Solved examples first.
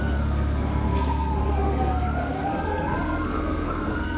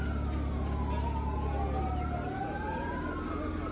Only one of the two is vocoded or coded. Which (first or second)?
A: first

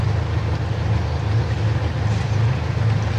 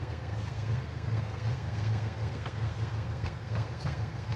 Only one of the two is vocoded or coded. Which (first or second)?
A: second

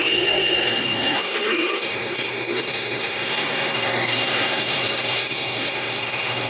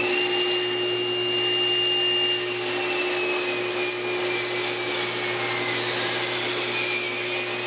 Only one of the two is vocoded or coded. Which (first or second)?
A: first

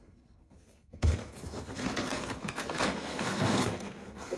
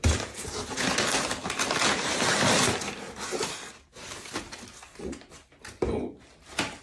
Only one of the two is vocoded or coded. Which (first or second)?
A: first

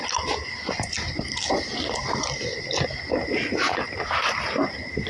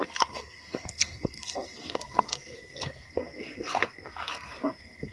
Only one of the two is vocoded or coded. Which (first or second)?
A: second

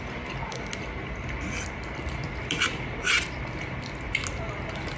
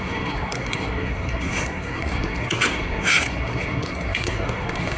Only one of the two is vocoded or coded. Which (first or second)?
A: second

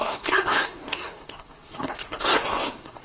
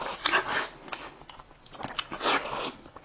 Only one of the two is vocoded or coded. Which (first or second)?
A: first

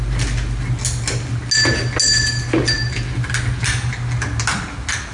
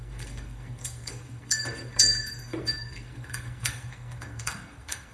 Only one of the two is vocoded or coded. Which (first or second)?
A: second